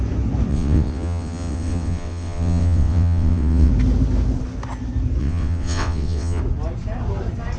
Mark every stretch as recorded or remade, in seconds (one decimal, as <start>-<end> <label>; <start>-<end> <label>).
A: 0.0-0.5 recorded; 0.5-3.7 remade; 3.7-5.2 recorded; 5.2-6.4 remade; 6.4-7.6 recorded